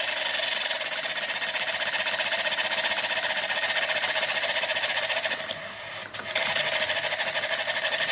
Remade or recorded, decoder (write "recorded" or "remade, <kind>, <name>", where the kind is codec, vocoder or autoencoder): recorded